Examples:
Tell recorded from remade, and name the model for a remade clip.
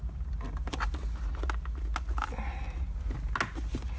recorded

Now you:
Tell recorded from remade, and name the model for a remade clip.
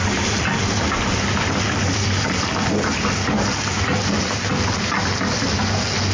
recorded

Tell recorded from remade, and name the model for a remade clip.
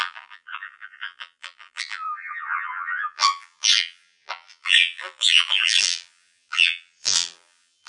remade, vocoder, BigVGAN v2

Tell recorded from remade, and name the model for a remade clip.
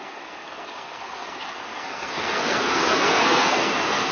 remade, codec, SNAC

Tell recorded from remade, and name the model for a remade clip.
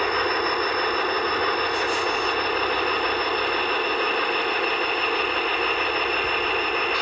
recorded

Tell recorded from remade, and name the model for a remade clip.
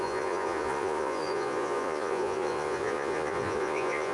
remade, vocoder, Vocos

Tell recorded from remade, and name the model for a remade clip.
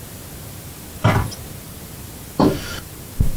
recorded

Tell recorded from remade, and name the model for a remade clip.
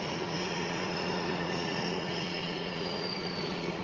remade, vocoder, Vocos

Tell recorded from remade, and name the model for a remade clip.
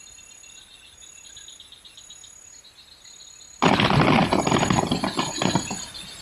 recorded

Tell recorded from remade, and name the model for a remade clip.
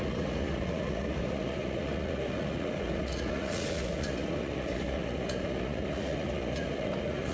remade, vocoder, Vocos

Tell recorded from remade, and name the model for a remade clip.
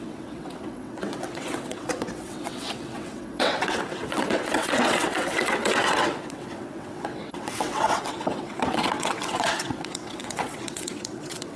remade, vocoder, WaveNeXt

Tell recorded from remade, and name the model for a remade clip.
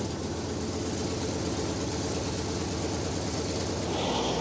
recorded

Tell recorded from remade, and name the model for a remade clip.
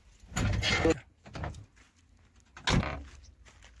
recorded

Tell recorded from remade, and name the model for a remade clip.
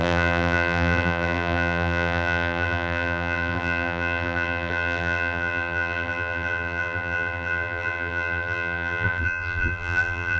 remade, vocoder, BigVGAN v2